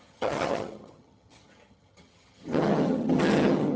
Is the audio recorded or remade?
remade